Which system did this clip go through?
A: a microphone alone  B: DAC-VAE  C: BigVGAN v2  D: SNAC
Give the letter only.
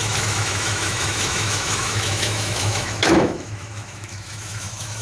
B